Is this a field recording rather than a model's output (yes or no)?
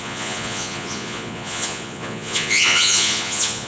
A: no